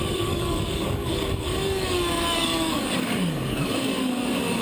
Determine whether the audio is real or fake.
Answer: fake